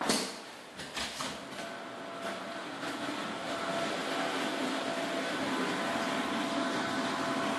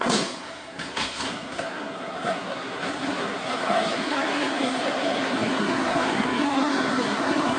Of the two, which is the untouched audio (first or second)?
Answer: first